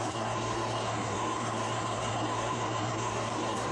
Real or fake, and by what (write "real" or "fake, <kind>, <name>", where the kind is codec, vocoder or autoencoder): fake, codec, SNAC